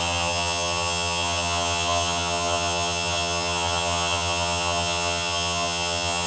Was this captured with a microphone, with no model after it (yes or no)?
no